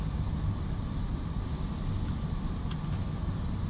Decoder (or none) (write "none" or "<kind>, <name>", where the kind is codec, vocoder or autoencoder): none